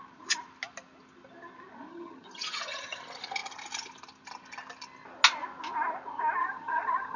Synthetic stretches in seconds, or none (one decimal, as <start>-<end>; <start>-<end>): 1.9-3.0; 6.4-7.2